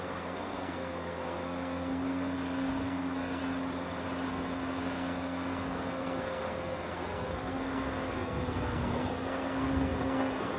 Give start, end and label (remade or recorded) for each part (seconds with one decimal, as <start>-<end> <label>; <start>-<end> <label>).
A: 0.0-3.4 remade; 3.4-4.3 recorded; 4.3-10.6 remade